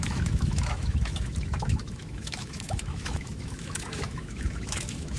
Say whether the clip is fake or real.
fake